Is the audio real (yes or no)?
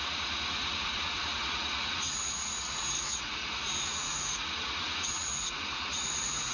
no